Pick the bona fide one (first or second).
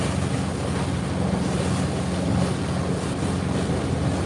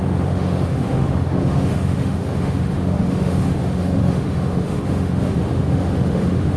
first